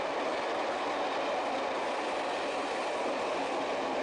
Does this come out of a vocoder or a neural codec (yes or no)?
no